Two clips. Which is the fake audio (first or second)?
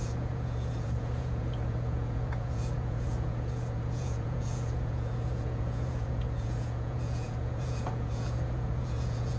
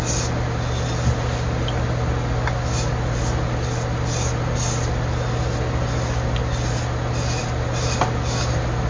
first